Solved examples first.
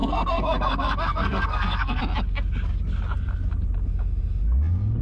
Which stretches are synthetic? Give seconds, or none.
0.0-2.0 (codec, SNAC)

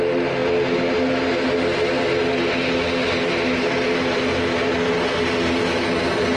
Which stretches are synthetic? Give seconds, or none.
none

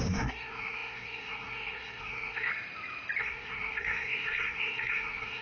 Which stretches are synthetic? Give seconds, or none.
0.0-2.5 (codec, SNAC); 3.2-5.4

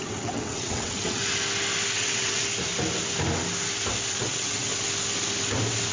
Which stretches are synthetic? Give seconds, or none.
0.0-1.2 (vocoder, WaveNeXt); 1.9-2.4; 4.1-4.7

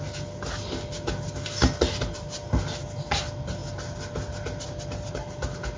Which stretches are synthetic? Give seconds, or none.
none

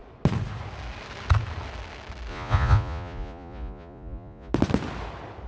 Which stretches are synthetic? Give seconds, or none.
2.3-4.5 (vocoder, Vocos)